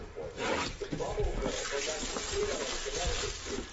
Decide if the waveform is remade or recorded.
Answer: remade